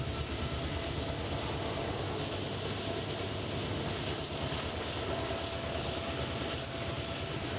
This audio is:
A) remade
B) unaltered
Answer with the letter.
B